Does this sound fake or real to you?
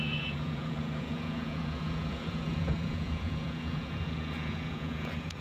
fake